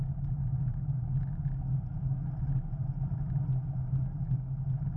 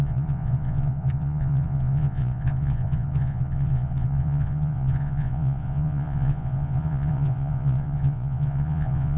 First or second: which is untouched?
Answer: first